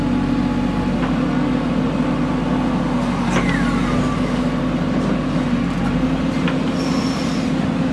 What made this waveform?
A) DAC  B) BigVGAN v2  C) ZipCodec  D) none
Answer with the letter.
D